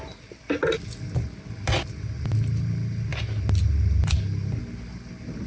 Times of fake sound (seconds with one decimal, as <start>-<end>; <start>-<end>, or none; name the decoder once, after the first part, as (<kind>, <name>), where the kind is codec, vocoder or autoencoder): none